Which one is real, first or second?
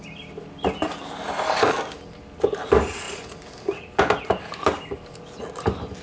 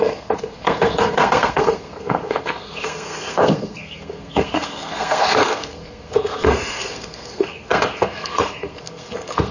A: first